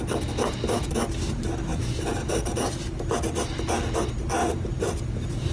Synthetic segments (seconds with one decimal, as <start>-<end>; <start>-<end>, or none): 1.7-3.6; 4.4-4.9